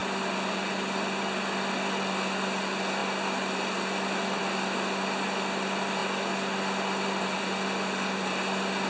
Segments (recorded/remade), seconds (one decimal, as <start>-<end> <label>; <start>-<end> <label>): 0.0-8.9 recorded